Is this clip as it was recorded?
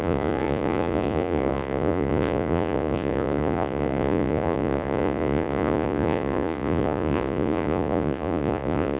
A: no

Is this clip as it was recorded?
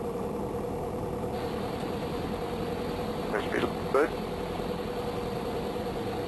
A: yes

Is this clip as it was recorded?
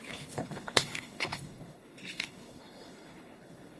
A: no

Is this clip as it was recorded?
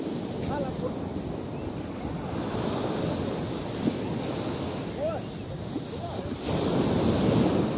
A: yes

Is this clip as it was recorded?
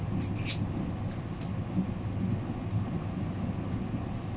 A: yes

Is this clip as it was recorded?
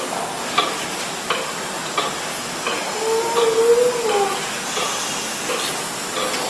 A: yes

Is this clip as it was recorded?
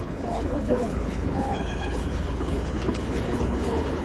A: no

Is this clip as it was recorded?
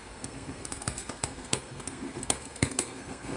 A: no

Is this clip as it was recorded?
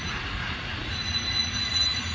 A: no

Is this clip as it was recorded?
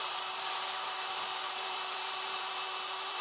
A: no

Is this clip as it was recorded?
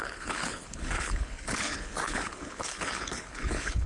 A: no